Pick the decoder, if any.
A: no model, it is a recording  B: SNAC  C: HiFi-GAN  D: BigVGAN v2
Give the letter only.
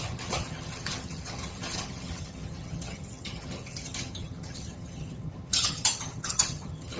C